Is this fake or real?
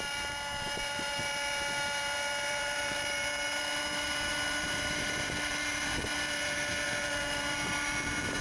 fake